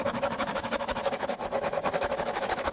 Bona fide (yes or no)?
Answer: no